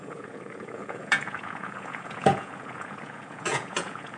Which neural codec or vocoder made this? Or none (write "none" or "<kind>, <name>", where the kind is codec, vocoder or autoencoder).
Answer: vocoder, Vocos